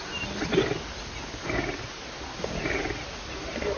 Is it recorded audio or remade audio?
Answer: recorded